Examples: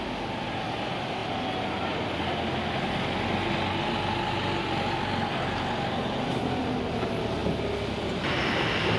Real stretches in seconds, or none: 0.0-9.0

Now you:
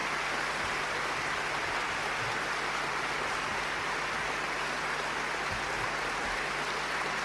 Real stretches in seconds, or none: 0.0-7.2

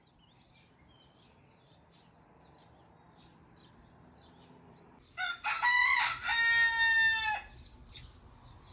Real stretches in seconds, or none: 0.0-8.7

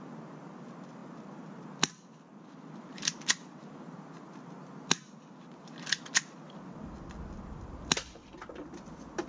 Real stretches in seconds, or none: 0.0-9.3

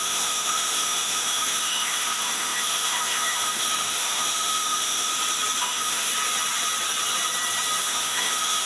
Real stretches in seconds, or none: 5.1-5.6; 6.1-7.8